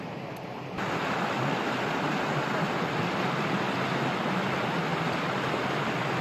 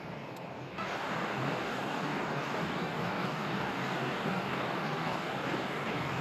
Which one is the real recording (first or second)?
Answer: first